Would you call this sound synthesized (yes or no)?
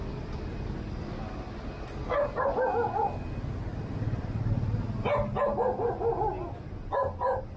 no